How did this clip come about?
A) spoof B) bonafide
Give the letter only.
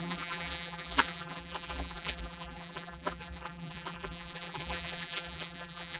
A